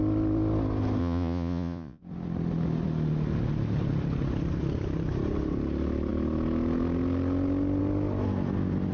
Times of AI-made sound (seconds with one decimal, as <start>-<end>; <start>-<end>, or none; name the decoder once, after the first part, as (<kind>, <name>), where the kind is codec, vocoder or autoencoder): 1.0-2.0 (vocoder, Vocos)